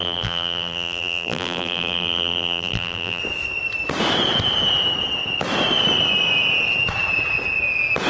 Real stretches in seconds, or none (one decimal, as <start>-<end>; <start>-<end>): 3.2-8.1